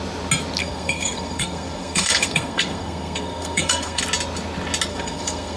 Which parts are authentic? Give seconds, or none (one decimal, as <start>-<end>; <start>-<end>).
0.0-0.6; 4.0-4.9